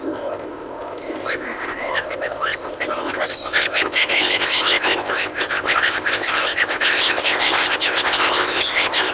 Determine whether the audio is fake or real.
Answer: fake